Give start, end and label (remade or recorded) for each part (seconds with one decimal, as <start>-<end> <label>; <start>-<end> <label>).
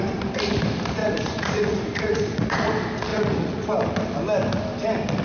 0.0-1.0 recorded; 1.0-2.7 remade; 2.7-3.1 recorded; 3.1-3.7 remade; 3.7-5.2 recorded